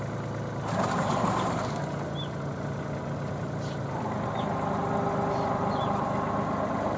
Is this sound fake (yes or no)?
no